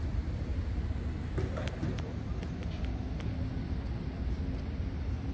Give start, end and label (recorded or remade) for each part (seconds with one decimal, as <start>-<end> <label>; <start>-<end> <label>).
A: 0.0-5.3 recorded